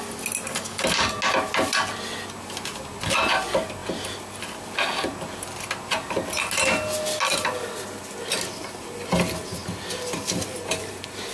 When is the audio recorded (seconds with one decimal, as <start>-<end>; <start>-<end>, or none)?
0.0-0.5; 1.1-11.3

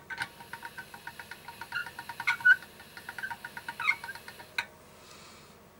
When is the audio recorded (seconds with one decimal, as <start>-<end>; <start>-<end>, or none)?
0.0-5.8

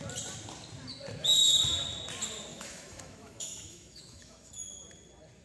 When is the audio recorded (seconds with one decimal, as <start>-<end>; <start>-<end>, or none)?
0.0-2.5; 4.7-5.4

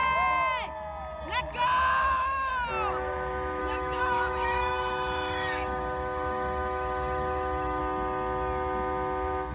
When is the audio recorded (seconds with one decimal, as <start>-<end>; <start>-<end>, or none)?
0.0-2.0; 2.5-3.6; 7.8-9.5

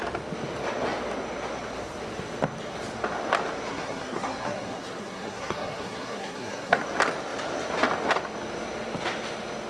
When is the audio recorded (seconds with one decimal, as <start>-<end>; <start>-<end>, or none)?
0.0-3.7; 6.8-9.7

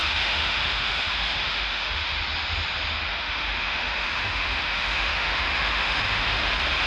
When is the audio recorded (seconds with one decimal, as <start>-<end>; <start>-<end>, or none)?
2.2-3.1; 6.5-6.9